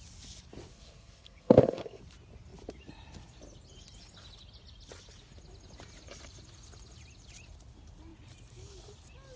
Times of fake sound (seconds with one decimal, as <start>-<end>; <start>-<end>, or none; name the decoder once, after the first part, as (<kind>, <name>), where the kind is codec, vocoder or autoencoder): 0.7-2.0 (codec, SNAC)